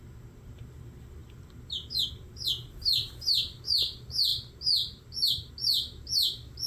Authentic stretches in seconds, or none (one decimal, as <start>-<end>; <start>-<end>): 0.0-6.7

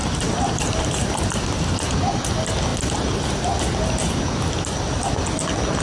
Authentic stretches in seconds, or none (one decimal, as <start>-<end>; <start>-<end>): 1.9-5.8

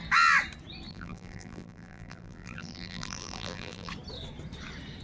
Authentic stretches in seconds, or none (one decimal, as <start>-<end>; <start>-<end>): 0.0-0.9; 3.9-5.0

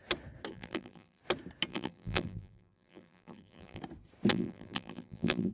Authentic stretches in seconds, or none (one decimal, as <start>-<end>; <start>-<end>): 0.0-0.5; 1.2-1.7; 3.8-4.3

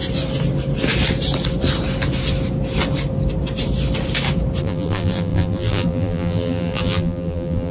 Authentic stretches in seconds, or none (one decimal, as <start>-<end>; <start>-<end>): 0.0-4.6